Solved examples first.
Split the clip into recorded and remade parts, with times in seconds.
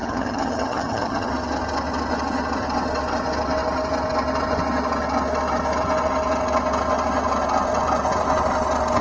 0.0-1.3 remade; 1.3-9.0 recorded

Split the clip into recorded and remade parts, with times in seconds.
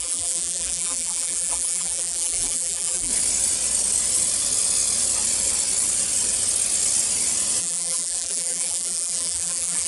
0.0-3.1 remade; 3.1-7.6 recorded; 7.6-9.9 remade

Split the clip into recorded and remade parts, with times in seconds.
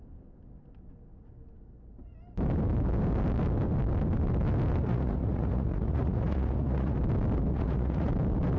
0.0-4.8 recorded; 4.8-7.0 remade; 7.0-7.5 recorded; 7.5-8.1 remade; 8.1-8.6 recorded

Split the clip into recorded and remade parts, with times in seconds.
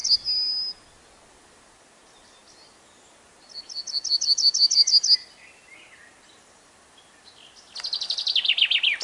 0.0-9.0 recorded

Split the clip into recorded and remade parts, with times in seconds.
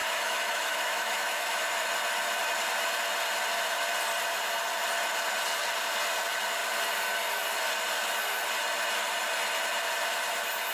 0.0-1.6 remade; 1.6-10.7 recorded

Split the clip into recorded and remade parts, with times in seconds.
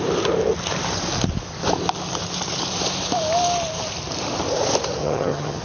0.0-5.0 recorded; 5.0-5.6 remade